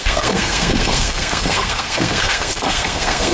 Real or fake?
fake